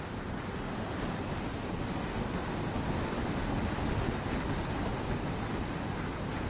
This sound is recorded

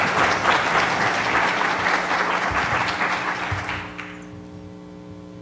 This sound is recorded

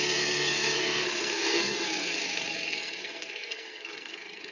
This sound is remade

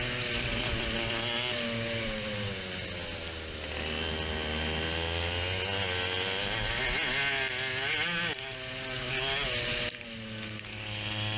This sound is recorded